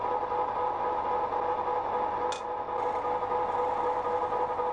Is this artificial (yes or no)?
no